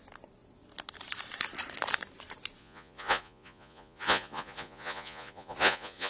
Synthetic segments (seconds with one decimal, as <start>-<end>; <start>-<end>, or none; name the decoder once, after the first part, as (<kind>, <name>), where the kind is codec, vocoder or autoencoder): 2.6-6.1 (vocoder, Vocos)